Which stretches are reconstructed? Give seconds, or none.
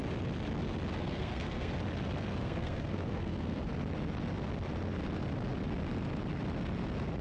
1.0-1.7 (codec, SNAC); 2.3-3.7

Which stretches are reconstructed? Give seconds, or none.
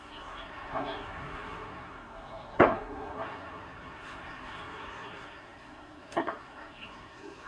0.0-7.5 (codec, SNAC)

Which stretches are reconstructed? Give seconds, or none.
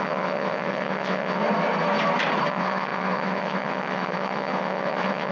0.0-1.4 (vocoder, WaveNeXt); 2.5-5.3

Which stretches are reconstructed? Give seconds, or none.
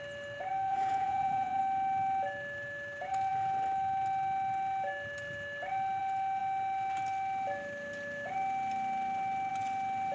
0.7-1.6 (vocoder, Vocos)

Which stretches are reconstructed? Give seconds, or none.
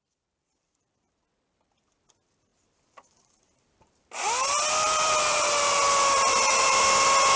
2.5-6.9 (vocoder, BigVGAN v2)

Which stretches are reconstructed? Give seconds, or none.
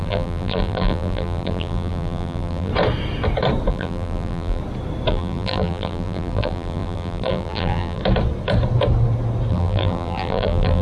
0.0-2.7 (vocoder, BigVGAN v2); 3.7-4.6; 5.1-8.0; 9.5-10.8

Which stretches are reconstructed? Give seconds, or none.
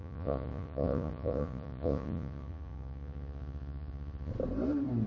0.0-4.3 (vocoder, Vocos)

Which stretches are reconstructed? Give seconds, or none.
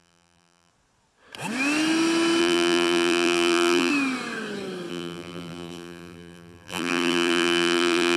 0.0-0.7 (vocoder, BigVGAN v2); 2.4-3.9; 4.9-8.2